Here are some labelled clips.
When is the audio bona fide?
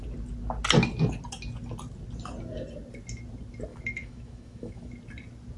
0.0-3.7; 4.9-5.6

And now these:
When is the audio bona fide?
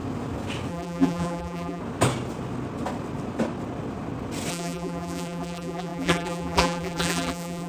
0.0-0.7; 1.8-4.5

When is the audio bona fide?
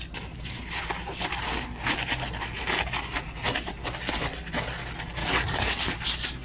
0.0-5.2; 5.8-6.4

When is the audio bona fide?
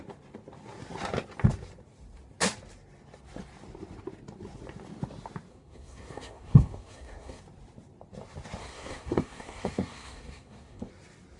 0.0-5.5; 7.4-8.6; 10.9-11.4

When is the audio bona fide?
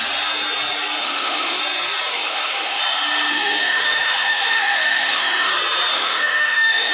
0.0-1.0; 1.6-2.1; 2.8-3.3; 5.5-5.9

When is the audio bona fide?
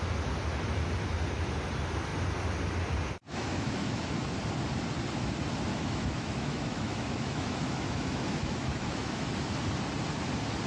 0.0-3.3; 4.0-5.7; 9.3-10.7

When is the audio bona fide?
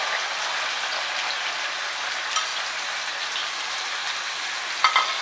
0.0-5.2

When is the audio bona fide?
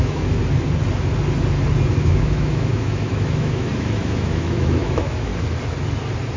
0.4-2.0; 5.3-6.4